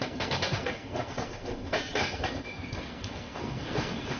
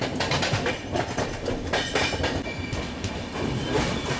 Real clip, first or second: second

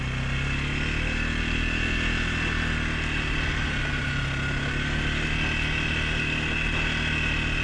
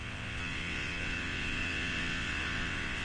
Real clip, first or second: first